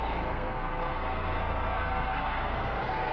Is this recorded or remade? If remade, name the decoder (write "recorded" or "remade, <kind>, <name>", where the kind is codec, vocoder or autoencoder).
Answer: remade, codec, SNAC